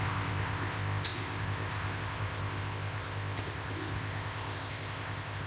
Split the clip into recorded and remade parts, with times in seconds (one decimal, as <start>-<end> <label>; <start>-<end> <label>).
0.0-5.5 remade